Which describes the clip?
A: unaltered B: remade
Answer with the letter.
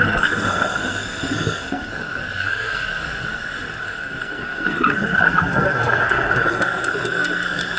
B